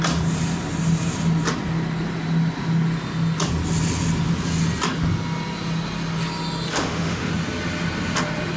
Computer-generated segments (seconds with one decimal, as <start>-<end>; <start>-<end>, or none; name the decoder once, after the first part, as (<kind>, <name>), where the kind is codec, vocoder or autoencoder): 6.7-7.3 (autoencoder, DAC-VAE)